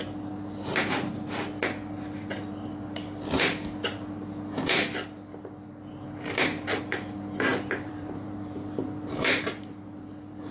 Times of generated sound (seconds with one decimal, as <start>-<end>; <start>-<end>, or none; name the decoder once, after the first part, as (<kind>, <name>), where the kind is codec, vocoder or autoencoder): 7.5-10.5 (vocoder, BigVGAN v2)